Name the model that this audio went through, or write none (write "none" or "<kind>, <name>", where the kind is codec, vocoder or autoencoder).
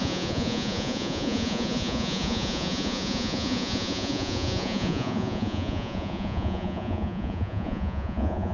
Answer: vocoder, Vocos